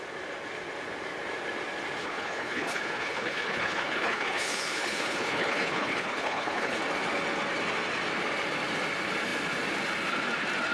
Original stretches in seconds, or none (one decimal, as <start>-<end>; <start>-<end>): 0.0-2.0; 6.8-10.7